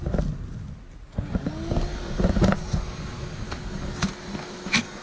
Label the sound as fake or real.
real